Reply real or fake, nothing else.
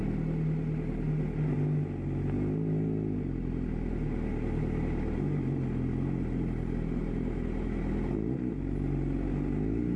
real